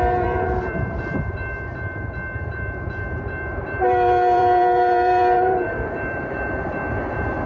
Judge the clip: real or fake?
fake